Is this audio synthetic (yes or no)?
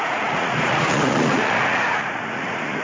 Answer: yes